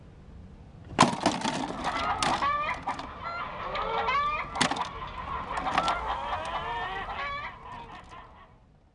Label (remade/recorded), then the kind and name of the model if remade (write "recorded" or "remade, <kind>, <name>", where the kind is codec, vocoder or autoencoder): recorded